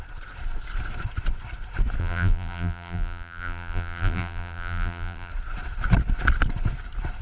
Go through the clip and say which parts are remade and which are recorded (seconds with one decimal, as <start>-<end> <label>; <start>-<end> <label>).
0.0-2.0 recorded; 2.0-5.3 remade; 5.3-7.2 recorded

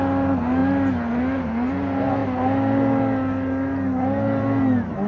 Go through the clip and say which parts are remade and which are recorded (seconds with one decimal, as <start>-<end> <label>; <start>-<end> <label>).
0.0-5.1 recorded

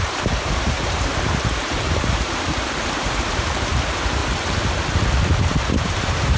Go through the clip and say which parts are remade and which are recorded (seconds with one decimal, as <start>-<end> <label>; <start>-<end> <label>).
0.0-4.2 remade; 4.2-5.6 recorded; 5.6-6.4 remade